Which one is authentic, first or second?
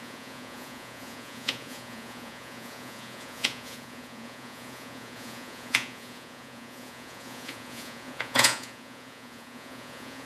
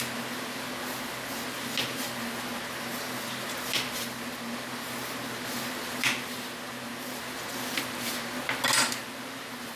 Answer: second